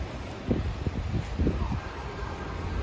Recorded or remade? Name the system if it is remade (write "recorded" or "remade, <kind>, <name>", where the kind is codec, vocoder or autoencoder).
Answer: recorded